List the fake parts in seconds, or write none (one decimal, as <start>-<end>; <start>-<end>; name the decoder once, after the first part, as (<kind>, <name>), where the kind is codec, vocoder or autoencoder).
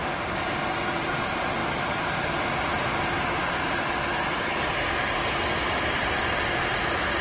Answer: none